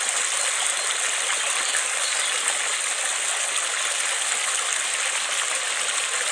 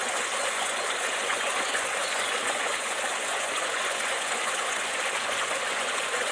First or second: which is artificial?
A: second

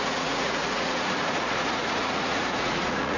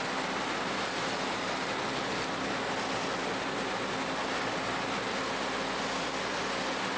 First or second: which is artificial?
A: first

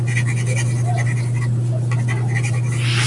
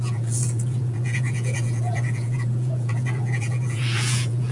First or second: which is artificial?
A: second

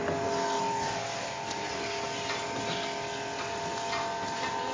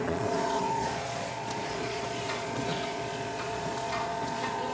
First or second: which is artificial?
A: second